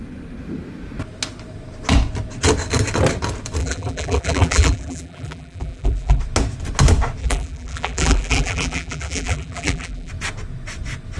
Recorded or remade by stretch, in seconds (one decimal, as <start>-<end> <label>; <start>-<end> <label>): 0.0-3.6 recorded; 3.6-6.2 remade; 6.2-7.2 recorded; 7.2-10.1 remade; 10.1-11.2 recorded